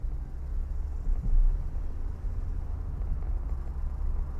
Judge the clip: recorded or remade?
recorded